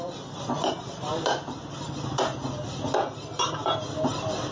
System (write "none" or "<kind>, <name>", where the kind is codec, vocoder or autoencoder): none